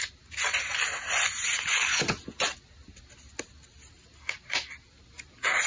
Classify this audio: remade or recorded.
recorded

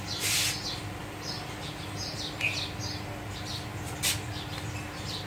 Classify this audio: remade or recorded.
recorded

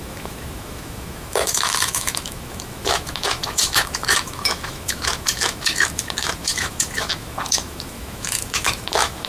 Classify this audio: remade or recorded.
remade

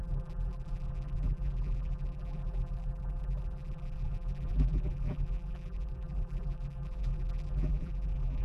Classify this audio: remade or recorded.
remade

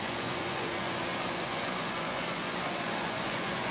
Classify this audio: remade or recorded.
remade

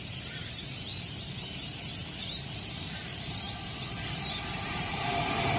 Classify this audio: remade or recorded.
remade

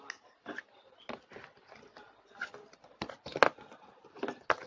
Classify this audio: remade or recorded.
recorded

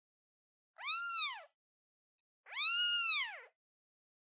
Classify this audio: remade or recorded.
recorded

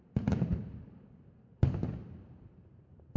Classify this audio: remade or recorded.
remade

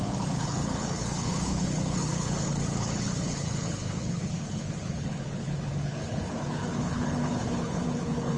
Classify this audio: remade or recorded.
remade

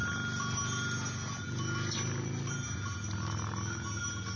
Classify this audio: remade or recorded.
recorded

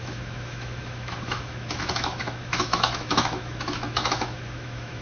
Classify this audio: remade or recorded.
remade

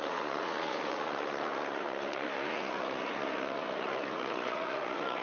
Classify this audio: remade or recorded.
remade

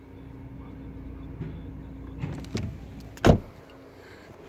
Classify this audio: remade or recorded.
recorded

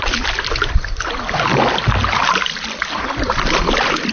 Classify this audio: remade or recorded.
recorded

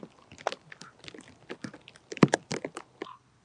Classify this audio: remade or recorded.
recorded